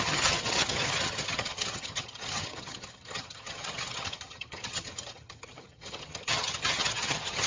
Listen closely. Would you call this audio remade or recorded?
remade